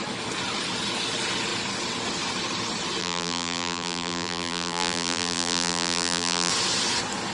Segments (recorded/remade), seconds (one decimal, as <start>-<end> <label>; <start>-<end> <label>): 0.0-3.0 recorded; 3.0-6.5 remade; 6.5-7.3 recorded